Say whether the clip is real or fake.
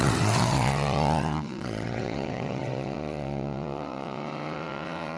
fake